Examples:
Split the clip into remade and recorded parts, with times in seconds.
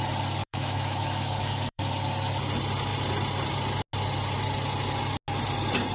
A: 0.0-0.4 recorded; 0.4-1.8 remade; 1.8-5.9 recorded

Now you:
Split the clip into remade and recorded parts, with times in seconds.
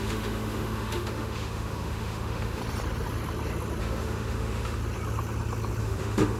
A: 0.0-2.6 remade; 2.6-3.8 recorded; 3.8-4.8 remade; 4.8-5.8 recorded; 5.8-6.4 remade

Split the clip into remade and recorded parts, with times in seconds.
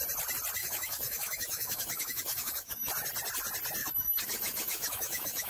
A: 0.0-0.6 recorded; 0.6-2.9 remade; 2.9-3.8 recorded; 3.8-5.5 remade